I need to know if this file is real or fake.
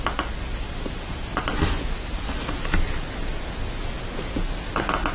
real